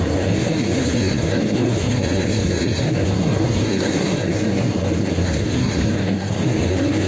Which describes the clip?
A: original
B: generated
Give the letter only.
B